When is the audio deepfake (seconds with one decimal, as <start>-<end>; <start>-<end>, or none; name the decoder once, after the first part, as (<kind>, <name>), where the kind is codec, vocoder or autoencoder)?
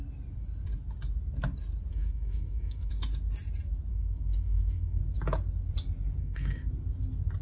1.9-2.9 (codec, SNAC); 3.9-5.0; 6.2-6.7